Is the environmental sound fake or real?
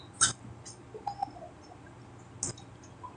real